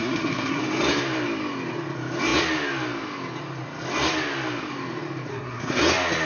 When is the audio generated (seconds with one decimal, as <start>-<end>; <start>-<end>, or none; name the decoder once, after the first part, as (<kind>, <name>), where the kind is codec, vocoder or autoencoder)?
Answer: 0.0-0.6 (codec, SNAC); 5.3-5.8